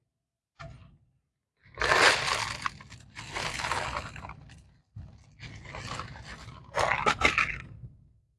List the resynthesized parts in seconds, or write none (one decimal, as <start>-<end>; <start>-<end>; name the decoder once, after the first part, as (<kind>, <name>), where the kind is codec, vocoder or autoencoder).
7.5-8.4 (codec, SNAC)